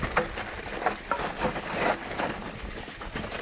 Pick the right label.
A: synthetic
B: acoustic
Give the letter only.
B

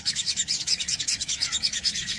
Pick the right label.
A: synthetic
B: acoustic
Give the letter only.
A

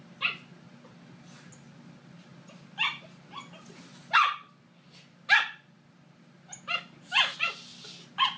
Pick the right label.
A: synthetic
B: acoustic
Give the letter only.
B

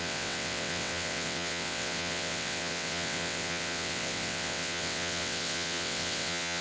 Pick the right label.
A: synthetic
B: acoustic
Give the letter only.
A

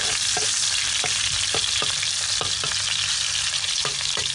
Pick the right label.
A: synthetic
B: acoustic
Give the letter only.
B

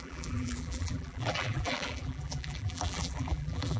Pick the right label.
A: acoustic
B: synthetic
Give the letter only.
B